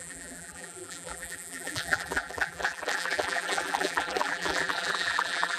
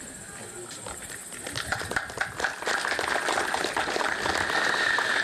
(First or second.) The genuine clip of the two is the second